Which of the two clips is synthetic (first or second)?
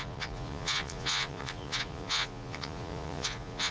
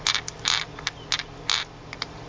first